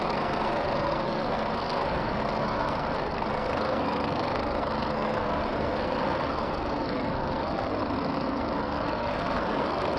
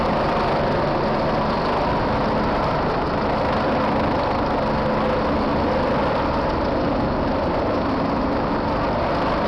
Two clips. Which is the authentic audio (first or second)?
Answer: second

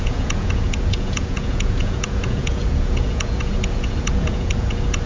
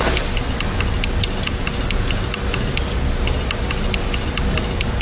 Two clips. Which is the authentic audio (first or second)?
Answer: second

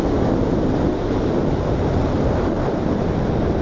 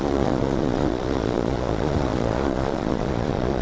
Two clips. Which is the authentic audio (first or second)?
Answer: first